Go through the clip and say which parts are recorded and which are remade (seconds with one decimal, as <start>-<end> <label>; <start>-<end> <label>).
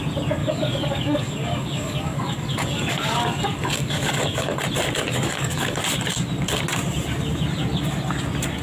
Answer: 0.0-0.4 recorded; 0.4-4.6 remade; 4.6-5.1 recorded; 5.1-5.8 remade; 5.8-8.6 recorded